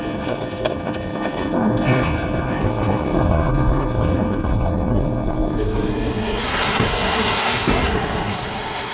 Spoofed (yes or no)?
yes